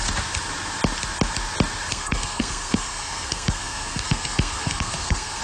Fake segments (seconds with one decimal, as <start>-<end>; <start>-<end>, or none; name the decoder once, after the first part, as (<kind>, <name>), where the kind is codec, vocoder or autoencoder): 1.9-5.4 (codec, SNAC)